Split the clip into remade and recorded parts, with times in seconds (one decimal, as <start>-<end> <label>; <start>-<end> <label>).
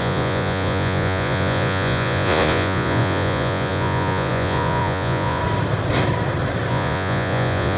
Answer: 0.0-5.4 remade; 5.4-6.7 recorded; 6.7-7.8 remade